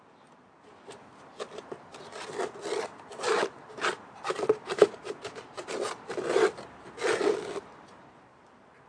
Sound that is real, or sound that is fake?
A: fake